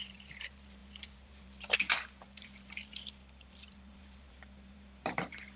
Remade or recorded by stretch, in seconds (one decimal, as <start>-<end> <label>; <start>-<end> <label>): 0.0-5.6 remade